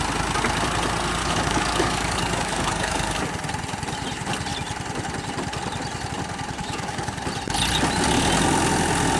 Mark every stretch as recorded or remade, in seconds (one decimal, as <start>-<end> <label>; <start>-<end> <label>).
0.0-1.2 recorded; 1.2-3.2 remade; 3.2-6.6 recorded; 6.6-7.2 remade; 7.2-9.2 recorded